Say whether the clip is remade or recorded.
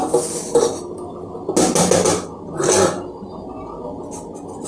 recorded